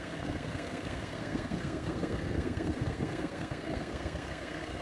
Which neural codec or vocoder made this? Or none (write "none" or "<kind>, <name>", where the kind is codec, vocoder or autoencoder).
codec, SNAC